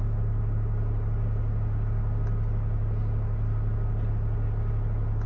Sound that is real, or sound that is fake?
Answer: real